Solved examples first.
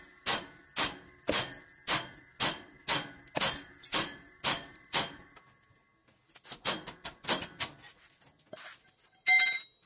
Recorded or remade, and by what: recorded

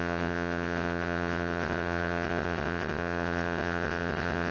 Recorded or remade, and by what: remade, vocoder, WaveNeXt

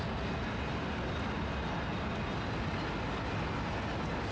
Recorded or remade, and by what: recorded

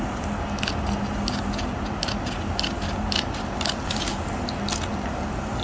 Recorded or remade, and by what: recorded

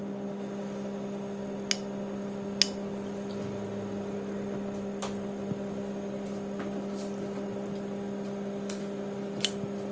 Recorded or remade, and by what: recorded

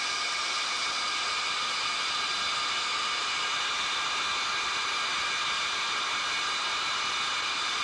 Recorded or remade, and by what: recorded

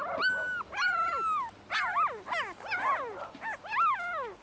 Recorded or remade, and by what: recorded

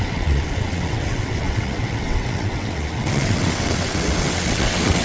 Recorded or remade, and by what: remade, vocoder, WaveNeXt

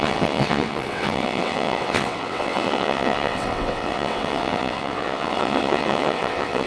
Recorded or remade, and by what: remade, vocoder, WaveNeXt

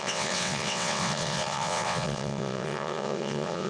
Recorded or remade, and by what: remade, vocoder, WaveNeXt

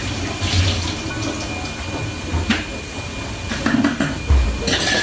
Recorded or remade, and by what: recorded